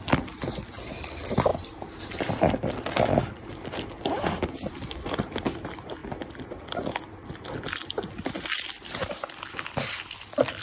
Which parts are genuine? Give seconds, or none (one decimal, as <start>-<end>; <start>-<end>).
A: 0.0-10.6